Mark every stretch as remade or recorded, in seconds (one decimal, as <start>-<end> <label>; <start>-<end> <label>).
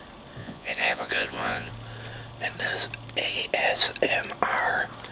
0.0-0.4 recorded; 0.4-1.7 remade; 1.7-5.1 recorded